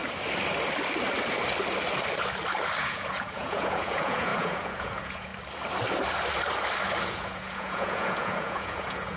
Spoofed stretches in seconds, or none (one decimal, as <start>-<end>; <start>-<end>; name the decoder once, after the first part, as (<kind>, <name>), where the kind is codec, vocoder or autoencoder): 2.8-5.3 (vocoder, Vocos); 7.0-9.2